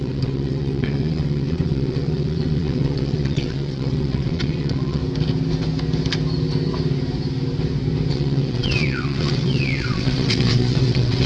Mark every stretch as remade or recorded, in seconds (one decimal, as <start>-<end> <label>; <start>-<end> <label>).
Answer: 0.0-5.0 remade; 5.0-8.1 recorded; 8.1-11.3 remade